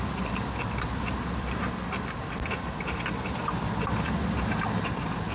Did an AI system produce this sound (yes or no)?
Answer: no